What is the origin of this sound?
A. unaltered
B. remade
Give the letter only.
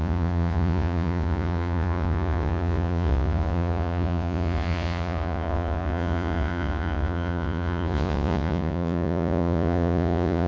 B